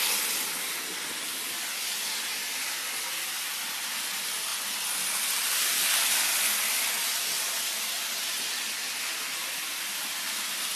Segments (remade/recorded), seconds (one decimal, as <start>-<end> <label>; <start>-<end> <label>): 0.0-10.8 recorded